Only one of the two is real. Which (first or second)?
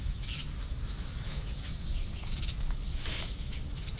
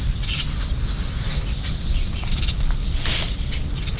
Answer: second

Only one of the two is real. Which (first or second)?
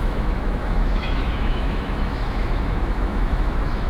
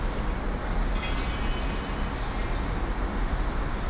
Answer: second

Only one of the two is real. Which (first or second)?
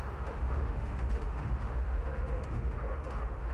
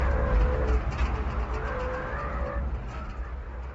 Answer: second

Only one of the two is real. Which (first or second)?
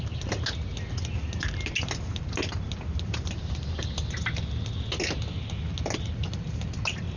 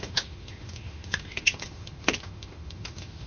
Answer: first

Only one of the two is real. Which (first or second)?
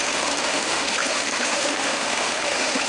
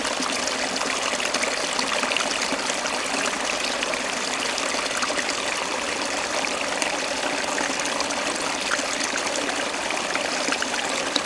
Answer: second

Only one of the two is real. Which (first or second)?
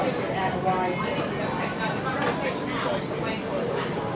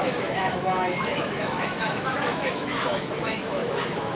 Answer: first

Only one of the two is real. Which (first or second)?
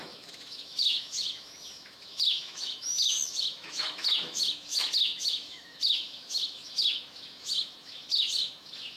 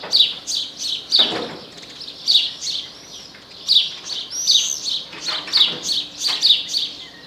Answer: second